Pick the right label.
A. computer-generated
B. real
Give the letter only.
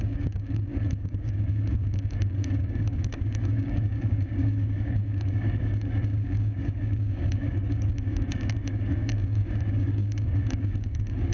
A